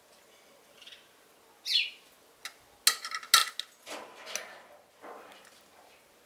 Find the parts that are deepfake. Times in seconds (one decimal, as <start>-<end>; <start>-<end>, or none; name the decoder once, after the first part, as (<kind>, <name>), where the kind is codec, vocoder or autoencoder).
none